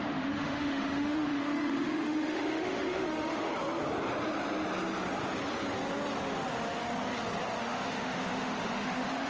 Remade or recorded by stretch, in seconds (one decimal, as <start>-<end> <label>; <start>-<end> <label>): 0.0-3.5 remade; 3.5-7.6 recorded; 7.6-9.3 remade